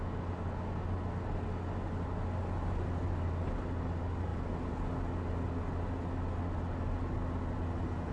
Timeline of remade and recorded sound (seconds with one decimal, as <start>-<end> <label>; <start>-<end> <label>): 0.0-8.1 recorded